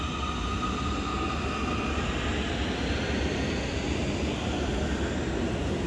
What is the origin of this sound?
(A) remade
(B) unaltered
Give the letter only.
B